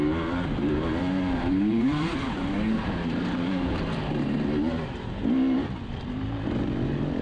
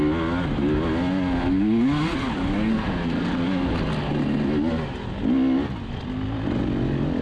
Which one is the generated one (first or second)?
first